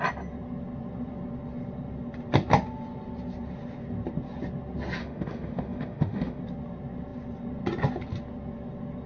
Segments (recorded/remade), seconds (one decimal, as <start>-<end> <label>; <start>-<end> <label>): 0.0-5.0 recorded; 5.0-6.4 remade; 6.4-9.1 recorded